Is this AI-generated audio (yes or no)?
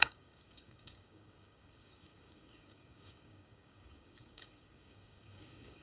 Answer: yes